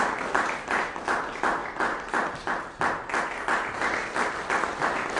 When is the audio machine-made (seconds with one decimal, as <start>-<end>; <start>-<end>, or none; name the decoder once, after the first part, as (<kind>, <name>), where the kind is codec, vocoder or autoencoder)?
none